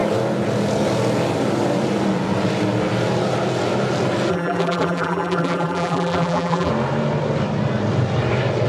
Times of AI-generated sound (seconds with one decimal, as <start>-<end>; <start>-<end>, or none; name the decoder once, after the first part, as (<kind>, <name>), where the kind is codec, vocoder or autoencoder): 4.3-6.7 (vocoder, BigVGAN v2)